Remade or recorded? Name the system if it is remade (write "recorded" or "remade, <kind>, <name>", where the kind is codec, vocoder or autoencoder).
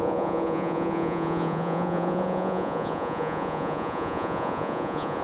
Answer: remade, vocoder, Vocos